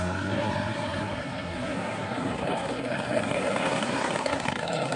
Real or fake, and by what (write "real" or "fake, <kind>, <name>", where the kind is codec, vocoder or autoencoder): fake, codec, SNAC